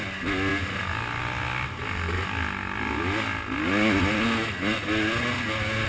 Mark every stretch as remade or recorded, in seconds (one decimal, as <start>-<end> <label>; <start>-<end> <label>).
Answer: 0.0-5.9 recorded